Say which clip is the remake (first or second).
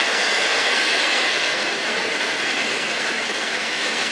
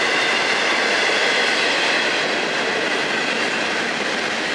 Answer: first